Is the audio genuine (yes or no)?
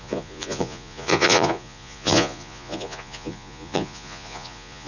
no